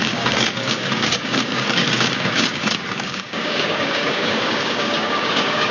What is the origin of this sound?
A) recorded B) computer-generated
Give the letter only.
B